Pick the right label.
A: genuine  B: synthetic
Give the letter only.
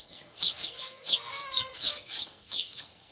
B